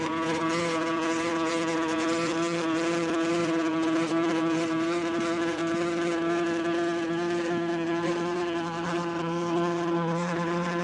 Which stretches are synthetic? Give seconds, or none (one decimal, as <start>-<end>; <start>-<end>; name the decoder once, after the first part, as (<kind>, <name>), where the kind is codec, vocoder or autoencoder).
0.0-2.3 (vocoder, Vocos); 3.3-5.6; 7.7-10.8

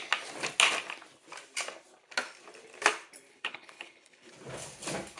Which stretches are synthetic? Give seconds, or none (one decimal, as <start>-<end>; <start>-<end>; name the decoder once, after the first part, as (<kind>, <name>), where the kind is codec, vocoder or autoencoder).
3.3-4.3 (codec, HILCodec)

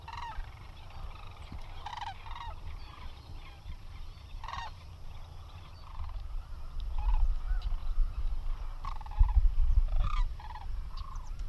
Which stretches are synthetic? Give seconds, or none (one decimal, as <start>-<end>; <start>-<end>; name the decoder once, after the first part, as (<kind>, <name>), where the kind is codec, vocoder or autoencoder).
0.0-1.9 (vocoder, BigVGAN v2); 2.6-11.5

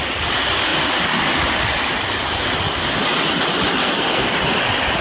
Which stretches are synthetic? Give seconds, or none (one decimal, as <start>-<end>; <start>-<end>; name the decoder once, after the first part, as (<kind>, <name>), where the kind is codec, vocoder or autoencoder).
3.8-4.3 (codec, SNAC)